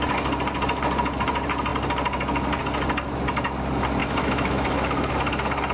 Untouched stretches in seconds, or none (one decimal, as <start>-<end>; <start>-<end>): 0.0-4.0; 5.1-5.7